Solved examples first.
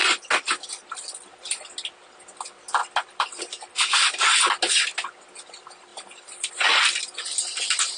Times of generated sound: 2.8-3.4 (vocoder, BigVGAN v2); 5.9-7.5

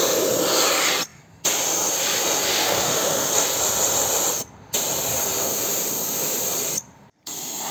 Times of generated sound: 2.5-3.3 (autoencoder, DAC-VAE)

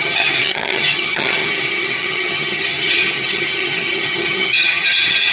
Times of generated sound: 0.0-5.3 (vocoder, HiFi-GAN)

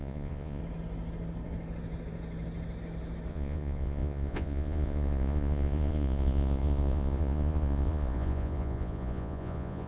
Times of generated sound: 0.0-0.6 (vocoder, Vocos); 3.3-9.9

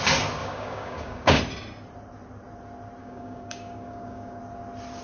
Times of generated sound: 0.4-1.4 (codec, DAC); 3.0-4.4